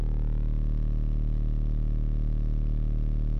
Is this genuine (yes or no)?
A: yes